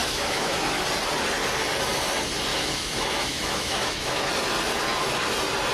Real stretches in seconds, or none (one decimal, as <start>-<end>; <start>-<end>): 0.8-2.5; 4.3-5.7